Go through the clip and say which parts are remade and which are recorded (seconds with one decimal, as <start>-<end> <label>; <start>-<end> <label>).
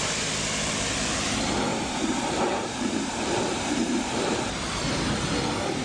0.0-1.7 recorded; 1.7-5.2 remade; 5.2-5.8 recorded